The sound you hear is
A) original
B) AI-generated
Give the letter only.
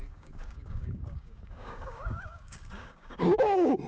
B